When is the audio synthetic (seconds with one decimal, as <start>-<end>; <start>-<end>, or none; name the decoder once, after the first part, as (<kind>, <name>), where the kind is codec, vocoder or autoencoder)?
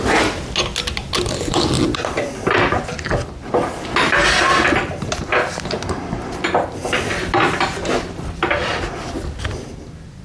none